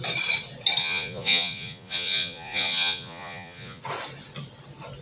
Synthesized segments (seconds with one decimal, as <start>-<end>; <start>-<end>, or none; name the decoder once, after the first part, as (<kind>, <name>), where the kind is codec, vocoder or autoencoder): 0.8-3.8 (vocoder, Vocos)